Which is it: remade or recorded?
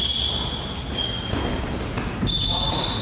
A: recorded